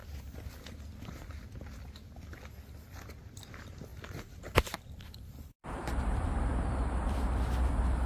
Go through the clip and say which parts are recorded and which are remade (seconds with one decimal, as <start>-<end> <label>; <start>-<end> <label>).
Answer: 0.0-3.0 recorded; 3.0-6.5 remade; 6.5-7.0 recorded; 7.0-8.1 remade